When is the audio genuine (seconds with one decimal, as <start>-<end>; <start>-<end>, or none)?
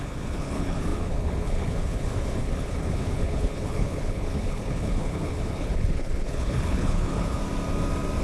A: 7.4-8.2